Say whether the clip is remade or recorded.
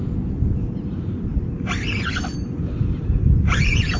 recorded